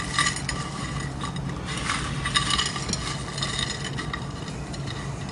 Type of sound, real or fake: real